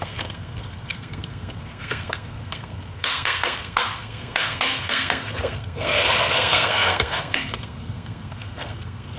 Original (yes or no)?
no